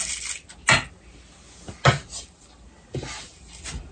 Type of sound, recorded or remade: recorded